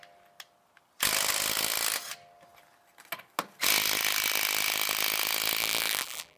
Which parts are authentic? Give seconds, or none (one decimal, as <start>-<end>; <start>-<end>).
0.0-5.6